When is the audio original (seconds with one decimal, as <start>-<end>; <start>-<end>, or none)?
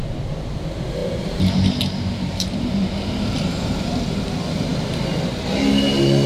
0.0-1.0; 4.1-6.3